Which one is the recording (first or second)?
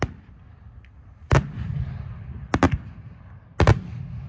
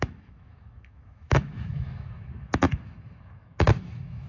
first